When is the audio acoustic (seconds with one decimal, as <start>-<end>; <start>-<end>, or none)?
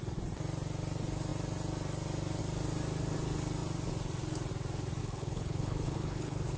0.0-5.0